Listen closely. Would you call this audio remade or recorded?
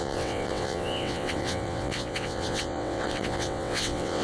remade